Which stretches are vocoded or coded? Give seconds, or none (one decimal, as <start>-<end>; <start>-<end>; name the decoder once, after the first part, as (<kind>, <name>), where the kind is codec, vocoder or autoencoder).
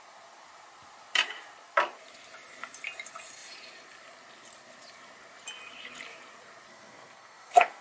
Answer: 6.7-7.8 (codec, SNAC)